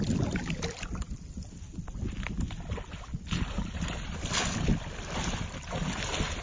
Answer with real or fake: real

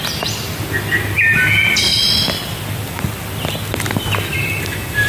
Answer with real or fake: real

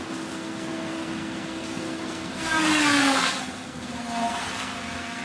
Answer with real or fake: fake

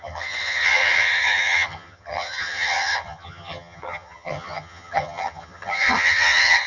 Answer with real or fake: fake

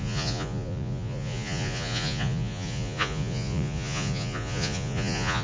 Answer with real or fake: fake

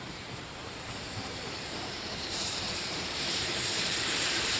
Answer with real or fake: fake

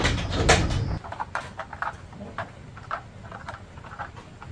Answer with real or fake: real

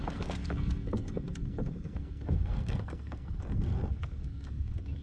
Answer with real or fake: fake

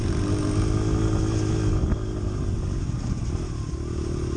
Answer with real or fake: real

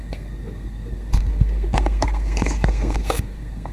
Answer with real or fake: fake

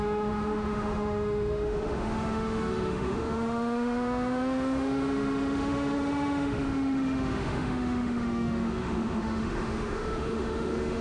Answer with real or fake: fake